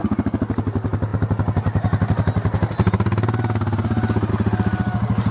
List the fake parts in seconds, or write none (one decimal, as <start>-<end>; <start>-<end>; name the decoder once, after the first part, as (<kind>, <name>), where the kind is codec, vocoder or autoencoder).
none